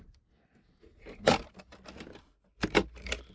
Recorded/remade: recorded